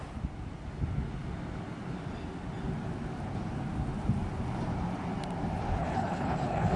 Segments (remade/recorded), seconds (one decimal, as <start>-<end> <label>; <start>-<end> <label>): 0.0-5.8 recorded; 5.8-6.8 remade